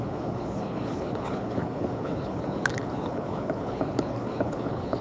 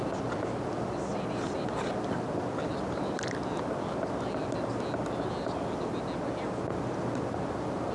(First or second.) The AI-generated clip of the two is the first